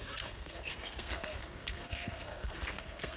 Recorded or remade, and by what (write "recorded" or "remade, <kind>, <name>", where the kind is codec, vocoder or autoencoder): remade, codec, SNAC